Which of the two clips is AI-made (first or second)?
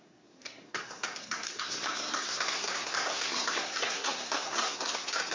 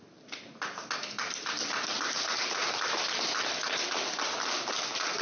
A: first